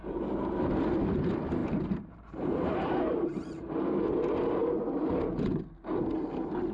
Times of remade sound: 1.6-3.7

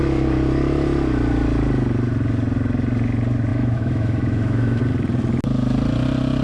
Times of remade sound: 3.5-4.8